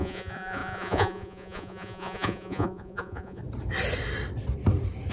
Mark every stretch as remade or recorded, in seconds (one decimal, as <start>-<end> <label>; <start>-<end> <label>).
0.0-3.4 remade; 3.4-5.1 recorded